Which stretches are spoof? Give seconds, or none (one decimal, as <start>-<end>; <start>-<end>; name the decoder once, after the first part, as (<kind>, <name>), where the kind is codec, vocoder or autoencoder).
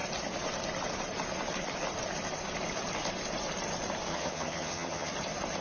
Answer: 4.1-5.1 (vocoder, HiFi-GAN)